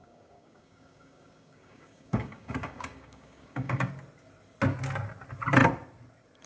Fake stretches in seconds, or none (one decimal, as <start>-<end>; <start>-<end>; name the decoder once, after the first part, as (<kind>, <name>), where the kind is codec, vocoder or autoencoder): 0.0-3.9 (codec, DAC)